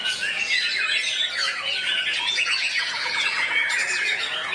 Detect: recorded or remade remade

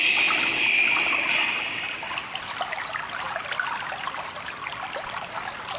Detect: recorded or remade remade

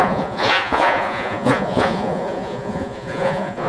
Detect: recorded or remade remade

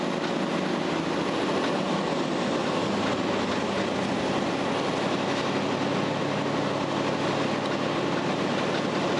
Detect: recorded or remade recorded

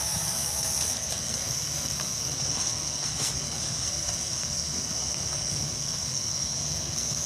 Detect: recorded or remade remade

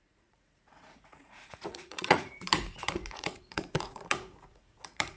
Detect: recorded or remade remade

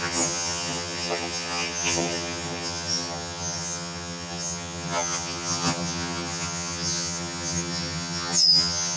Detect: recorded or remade remade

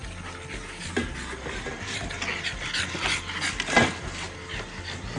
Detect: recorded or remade recorded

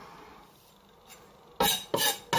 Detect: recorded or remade recorded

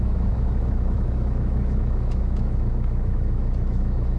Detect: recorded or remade remade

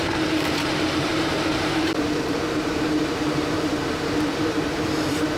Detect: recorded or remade remade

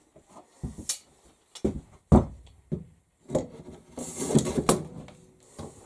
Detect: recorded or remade recorded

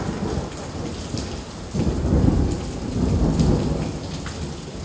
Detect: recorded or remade recorded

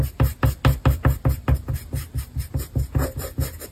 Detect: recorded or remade recorded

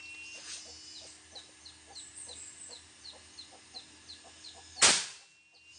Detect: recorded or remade recorded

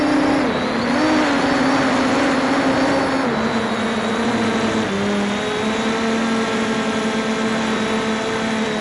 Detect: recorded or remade recorded